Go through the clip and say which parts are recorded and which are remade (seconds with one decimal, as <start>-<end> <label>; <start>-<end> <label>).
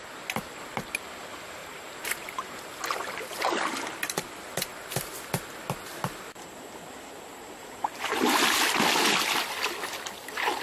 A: 0.0-1.6 recorded; 1.6-2.8 remade; 2.8-7.6 recorded; 7.6-8.6 remade; 8.6-10.6 recorded